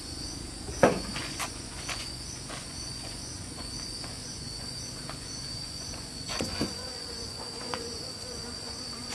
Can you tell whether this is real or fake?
fake